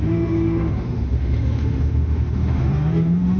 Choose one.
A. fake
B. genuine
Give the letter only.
A